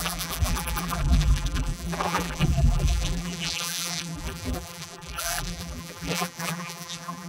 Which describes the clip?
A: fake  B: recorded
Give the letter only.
A